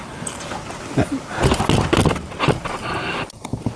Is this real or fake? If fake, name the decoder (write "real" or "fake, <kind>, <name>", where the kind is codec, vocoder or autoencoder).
real